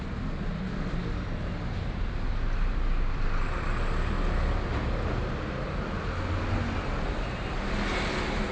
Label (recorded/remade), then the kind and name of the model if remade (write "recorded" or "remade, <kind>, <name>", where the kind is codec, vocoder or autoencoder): recorded